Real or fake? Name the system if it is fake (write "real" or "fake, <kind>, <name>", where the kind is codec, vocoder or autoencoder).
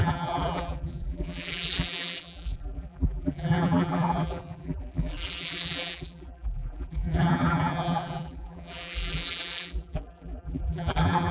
fake, vocoder, BigVGAN v2